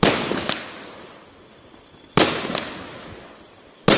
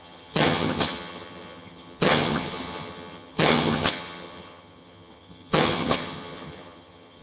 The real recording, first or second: first